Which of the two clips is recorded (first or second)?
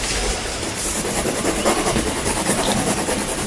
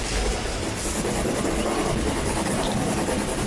second